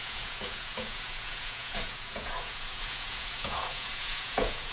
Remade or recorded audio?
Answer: remade